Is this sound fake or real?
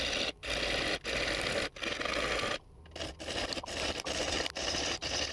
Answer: real